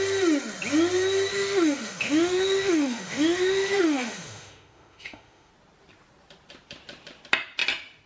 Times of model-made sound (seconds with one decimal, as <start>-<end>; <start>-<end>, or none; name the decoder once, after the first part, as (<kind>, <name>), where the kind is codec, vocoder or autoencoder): 1.3-5.5 (autoencoder, DAC-VAE)